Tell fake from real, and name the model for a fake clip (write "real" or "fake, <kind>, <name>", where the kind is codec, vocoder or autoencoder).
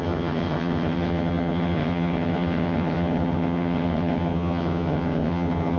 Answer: fake, vocoder, HiFi-GAN